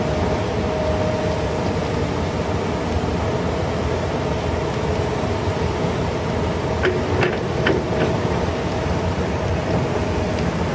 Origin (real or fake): real